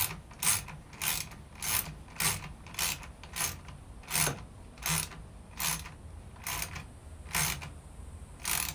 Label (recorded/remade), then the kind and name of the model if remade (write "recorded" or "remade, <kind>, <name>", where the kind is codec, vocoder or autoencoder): recorded